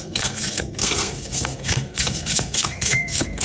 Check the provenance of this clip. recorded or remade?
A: remade